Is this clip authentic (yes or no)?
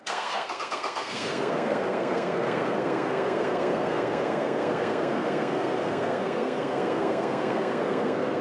no